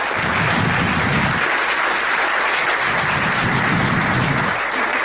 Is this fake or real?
real